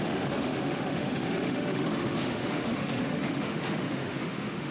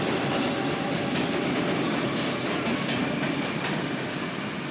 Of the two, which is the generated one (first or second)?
first